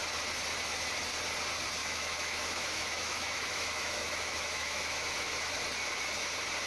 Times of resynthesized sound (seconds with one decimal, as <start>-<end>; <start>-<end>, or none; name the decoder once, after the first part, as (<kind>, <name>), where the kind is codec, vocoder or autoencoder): 1.8-5.5 (autoencoder, DAC-VAE)